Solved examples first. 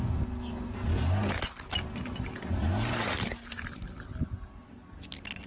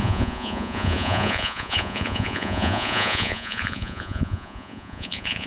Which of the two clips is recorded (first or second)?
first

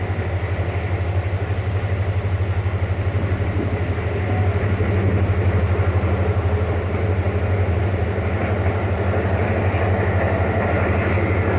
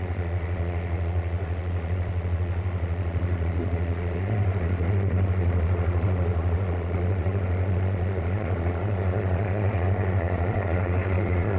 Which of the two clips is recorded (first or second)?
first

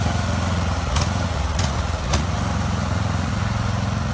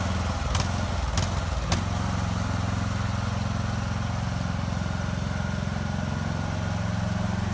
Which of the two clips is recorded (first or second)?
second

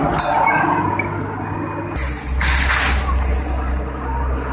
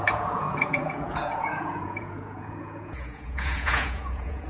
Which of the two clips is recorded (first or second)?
first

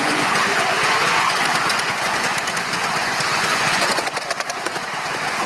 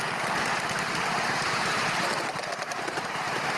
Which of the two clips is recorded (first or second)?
second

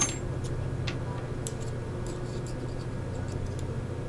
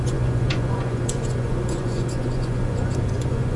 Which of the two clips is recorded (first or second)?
first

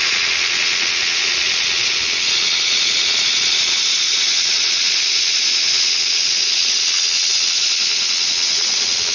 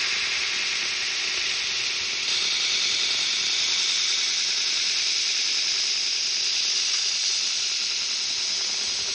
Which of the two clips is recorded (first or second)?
second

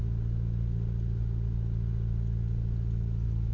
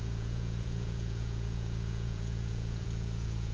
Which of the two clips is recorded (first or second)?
first